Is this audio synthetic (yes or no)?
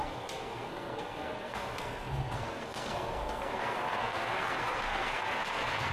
yes